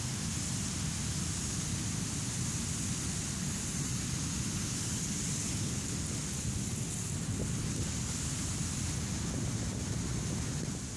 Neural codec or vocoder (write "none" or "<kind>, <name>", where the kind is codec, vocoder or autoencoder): none